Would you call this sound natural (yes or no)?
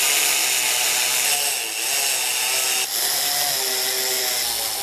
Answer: yes